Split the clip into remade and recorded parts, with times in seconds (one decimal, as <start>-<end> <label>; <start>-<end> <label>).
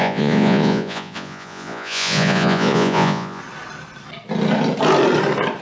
0.0-3.4 remade; 3.4-5.6 recorded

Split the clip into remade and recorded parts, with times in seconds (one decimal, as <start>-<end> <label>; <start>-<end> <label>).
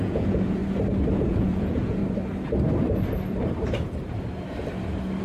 0.0-0.6 remade; 0.6-1.1 recorded; 1.1-2.0 remade; 2.0-5.2 recorded